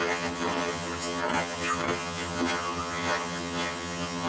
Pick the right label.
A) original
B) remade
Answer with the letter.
B